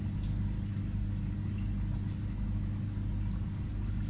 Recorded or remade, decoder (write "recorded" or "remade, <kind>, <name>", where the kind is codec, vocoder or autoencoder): recorded